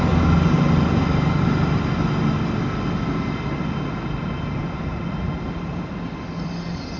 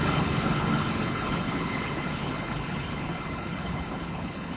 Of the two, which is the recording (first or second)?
first